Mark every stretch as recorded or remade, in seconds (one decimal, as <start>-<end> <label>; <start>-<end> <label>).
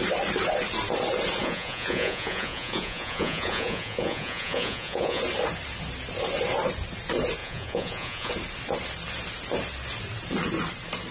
0.0-1.4 recorded; 1.4-5.2 remade; 5.2-7.4 recorded; 7.4-8.3 remade; 8.3-11.1 recorded